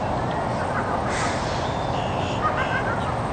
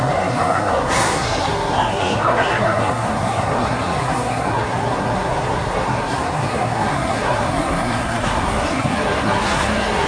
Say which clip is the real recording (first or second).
first